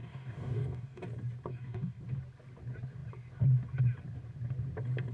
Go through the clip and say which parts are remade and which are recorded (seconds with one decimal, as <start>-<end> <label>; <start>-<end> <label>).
0.0-1.0 remade; 1.0-1.5 recorded; 1.5-2.0 remade; 2.0-5.1 recorded